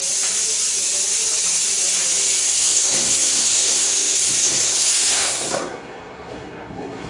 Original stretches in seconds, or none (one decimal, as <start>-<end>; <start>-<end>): 0.0-2.4